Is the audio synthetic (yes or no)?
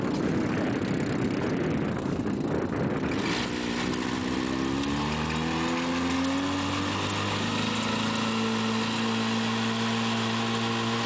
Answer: no